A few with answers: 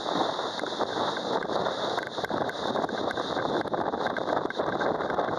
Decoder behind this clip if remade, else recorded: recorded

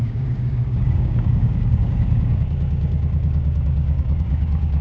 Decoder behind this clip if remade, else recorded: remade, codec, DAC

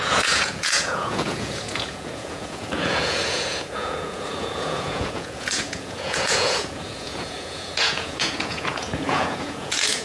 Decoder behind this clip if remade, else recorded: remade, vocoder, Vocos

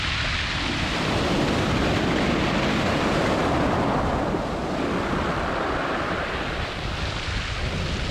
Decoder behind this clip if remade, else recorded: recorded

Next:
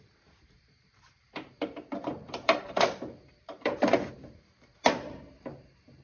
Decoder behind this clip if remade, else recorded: remade, vocoder, BigVGAN v2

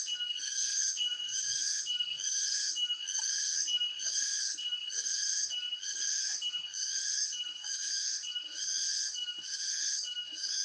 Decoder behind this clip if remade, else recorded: remade, codec, SNAC